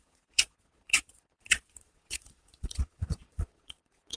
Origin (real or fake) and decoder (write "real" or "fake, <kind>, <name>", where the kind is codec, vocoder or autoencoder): fake, vocoder, Vocos